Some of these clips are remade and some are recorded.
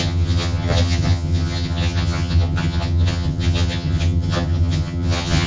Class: remade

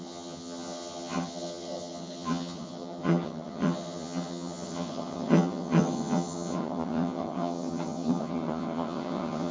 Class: remade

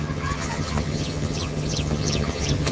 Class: remade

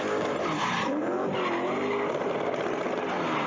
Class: recorded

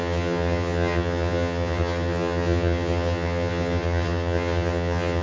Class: remade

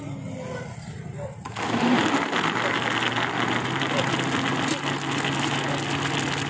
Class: recorded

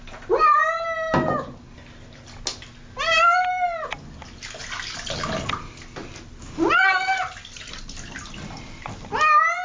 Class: recorded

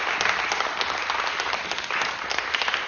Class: recorded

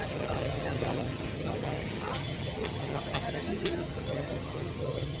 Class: remade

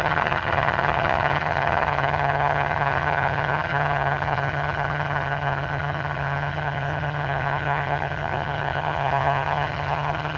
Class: remade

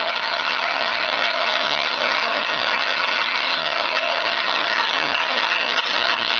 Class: remade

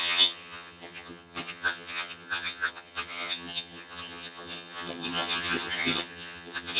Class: remade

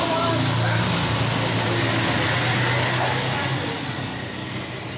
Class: recorded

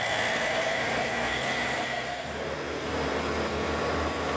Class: recorded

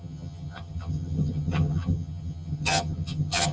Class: remade